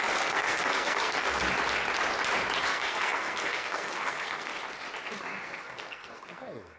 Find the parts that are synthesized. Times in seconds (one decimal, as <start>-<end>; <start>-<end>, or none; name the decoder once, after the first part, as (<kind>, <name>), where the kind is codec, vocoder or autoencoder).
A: 0.0-1.4 (codec, SNAC); 2.6-4.5; 5.2-6.8

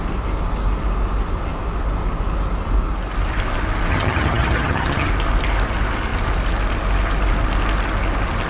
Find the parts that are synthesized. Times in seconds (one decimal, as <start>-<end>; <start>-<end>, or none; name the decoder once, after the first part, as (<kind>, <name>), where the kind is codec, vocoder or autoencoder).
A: 3.9-5.1 (vocoder, HiFi-GAN)

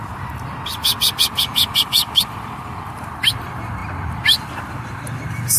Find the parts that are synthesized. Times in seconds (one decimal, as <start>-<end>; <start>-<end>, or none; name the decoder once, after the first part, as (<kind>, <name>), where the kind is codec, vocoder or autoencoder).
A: none

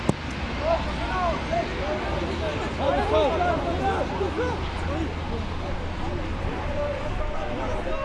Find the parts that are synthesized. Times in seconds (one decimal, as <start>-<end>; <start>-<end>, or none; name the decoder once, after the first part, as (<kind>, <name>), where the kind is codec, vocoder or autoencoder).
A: none

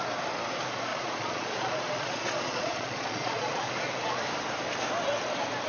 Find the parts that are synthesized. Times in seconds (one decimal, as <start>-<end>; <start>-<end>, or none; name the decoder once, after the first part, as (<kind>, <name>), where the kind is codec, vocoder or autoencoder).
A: 0.9-3.7 (vocoder, Vocos)

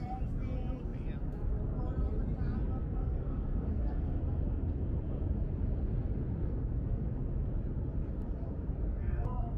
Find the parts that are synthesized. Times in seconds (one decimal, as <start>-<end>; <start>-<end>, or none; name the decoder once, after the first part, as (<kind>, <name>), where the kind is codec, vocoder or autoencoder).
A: 2.8-4.2 (codec, SNAC); 6.4-7.1; 8.9-9.6

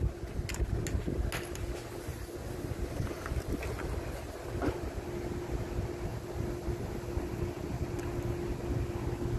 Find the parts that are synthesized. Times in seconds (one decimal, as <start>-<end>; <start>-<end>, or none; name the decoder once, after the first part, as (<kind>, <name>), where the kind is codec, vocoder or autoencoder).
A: 2.1-2.8 (vocoder, BigVGAN v2); 6.1-7.4

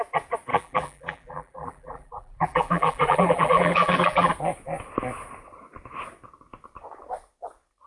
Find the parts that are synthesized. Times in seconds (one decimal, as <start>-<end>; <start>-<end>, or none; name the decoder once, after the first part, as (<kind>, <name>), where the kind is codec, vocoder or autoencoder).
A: 0.5-4.3 (vocoder, BigVGAN v2)